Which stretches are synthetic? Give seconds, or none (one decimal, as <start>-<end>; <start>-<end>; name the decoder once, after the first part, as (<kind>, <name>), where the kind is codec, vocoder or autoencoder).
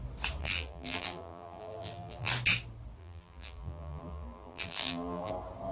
0.4-2.3 (vocoder, BigVGAN v2); 3.0-5.3